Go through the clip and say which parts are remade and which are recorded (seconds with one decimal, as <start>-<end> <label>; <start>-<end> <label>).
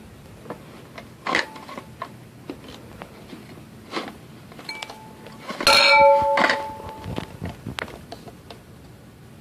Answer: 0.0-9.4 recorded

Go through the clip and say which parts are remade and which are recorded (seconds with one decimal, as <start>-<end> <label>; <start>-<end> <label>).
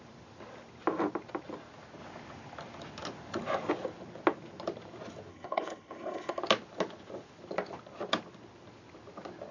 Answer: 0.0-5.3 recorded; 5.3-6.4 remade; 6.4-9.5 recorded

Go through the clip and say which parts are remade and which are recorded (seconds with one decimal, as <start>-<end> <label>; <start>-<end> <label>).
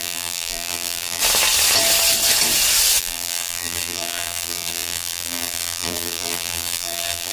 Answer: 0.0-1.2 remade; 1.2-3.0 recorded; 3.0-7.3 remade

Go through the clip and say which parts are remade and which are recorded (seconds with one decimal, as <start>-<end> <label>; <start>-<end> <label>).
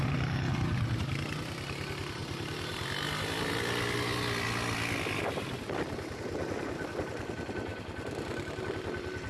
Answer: 0.0-9.3 recorded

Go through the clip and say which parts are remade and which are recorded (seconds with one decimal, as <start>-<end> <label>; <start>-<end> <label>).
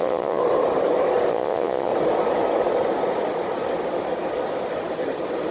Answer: 0.0-0.4 remade; 0.4-1.3 recorded; 1.3-1.9 remade; 1.9-5.5 recorded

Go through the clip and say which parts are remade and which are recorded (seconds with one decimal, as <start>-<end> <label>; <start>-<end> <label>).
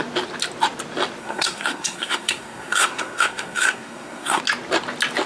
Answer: 0.0-1.2 recorded; 1.2-4.4 remade; 4.4-5.3 recorded